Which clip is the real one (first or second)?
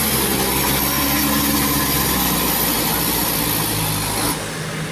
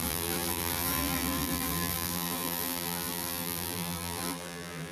first